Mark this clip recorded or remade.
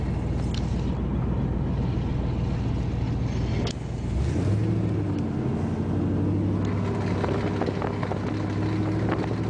recorded